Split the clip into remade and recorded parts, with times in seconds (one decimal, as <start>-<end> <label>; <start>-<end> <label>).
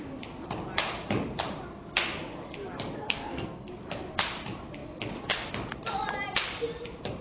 0.0-3.0 recorded; 3.0-3.7 remade; 3.7-7.2 recorded